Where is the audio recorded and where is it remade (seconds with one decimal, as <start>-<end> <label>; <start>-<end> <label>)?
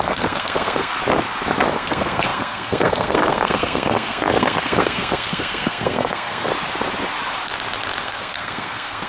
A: 0.0-0.9 remade; 0.9-1.7 recorded; 1.7-6.5 remade; 6.5-8.0 recorded; 8.0-9.1 remade